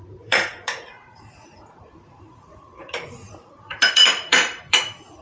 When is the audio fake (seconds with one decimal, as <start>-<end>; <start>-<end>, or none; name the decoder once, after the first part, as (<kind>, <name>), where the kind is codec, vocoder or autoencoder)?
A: 0.0-5.2 (vocoder, Vocos)